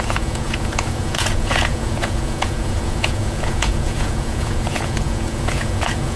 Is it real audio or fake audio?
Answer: fake